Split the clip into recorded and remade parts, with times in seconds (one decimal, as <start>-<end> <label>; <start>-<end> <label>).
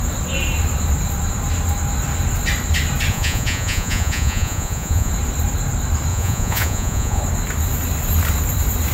0.0-3.1 recorded; 3.1-5.1 remade; 5.1-6.1 recorded; 6.1-7.2 remade; 7.2-8.9 recorded